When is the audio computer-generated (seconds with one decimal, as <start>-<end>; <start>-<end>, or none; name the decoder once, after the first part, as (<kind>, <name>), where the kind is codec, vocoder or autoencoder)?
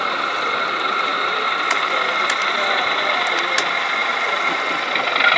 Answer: none